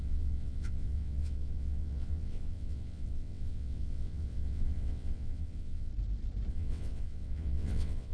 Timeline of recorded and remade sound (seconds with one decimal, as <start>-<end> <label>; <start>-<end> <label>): 0.0-5.9 remade; 5.9-6.5 recorded; 6.5-8.1 remade